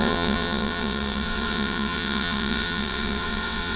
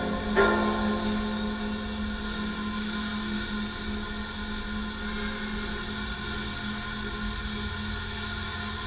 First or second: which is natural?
second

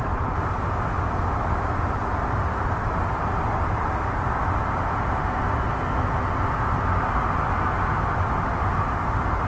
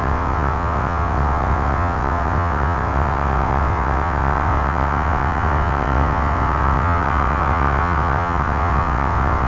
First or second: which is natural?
first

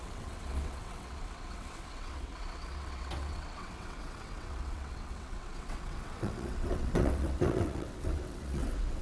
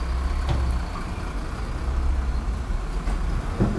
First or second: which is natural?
second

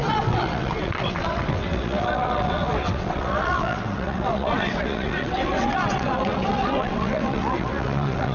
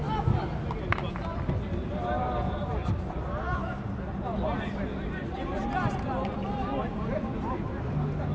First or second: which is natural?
second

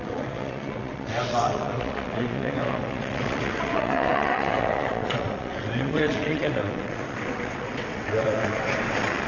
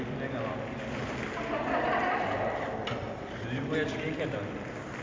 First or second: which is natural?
second